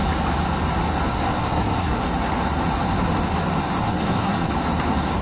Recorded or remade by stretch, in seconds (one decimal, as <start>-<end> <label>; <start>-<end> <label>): 0.0-1.1 recorded; 1.1-2.0 remade; 2.0-3.8 recorded; 3.8-4.5 remade; 4.5-5.2 recorded